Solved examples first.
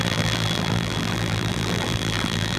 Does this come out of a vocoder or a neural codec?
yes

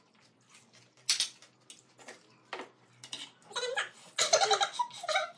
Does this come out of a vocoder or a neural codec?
no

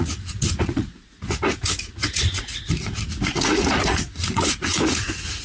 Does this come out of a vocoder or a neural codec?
yes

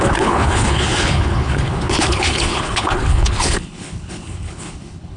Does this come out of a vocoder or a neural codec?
yes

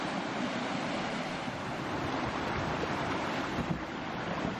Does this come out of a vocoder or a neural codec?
yes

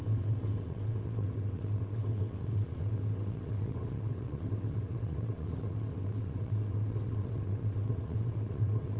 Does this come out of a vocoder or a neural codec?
yes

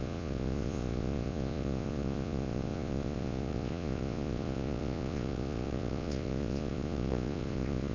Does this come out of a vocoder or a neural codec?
yes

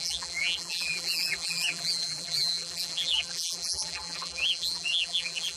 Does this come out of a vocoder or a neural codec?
yes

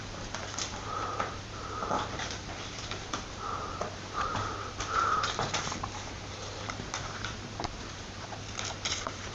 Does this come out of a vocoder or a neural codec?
yes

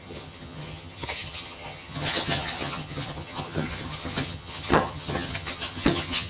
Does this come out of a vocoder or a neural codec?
yes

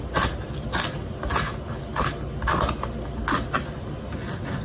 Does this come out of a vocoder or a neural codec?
no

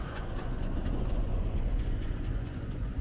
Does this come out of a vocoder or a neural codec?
yes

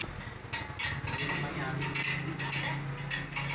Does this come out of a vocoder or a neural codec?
no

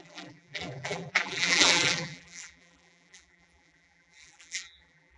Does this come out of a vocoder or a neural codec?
yes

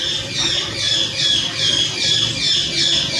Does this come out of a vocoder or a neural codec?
no